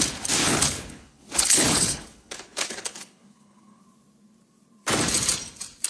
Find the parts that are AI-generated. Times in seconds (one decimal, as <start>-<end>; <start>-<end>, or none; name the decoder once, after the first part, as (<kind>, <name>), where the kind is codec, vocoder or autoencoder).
0.4-3.8 (codec, HILCodec)